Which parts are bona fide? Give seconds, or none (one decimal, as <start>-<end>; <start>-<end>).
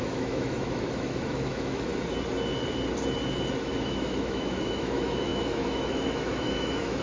1.9-3.6